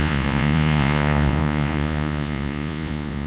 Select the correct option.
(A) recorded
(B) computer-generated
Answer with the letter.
B